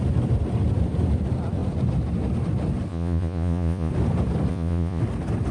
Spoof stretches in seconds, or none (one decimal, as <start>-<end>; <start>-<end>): 2.9-3.9; 4.5-5.0